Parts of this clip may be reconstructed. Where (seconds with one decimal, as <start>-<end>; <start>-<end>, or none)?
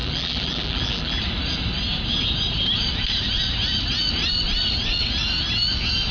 0.0-1.2